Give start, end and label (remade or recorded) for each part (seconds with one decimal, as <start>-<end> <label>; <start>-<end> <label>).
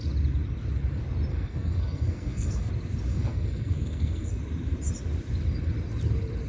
0.0-1.3 recorded; 1.3-2.7 remade; 2.7-3.1 recorded; 3.1-4.4 remade; 4.4-6.5 recorded